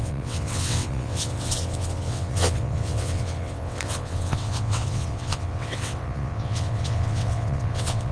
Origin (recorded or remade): remade